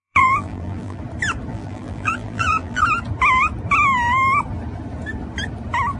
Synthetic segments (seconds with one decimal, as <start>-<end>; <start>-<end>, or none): 0.0-1.0; 1.5-2.8